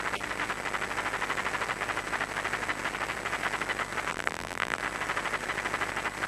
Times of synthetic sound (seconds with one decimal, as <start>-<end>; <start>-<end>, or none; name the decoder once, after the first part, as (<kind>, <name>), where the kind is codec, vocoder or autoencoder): 4.1-4.8 (vocoder, BigVGAN v2)